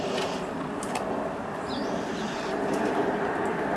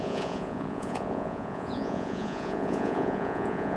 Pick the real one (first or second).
first